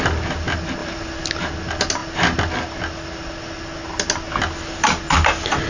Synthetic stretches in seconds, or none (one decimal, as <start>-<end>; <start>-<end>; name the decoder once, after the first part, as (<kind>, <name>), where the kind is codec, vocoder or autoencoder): none